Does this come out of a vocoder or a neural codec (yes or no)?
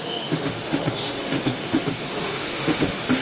yes